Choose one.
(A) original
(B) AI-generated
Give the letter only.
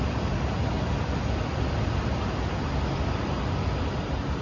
A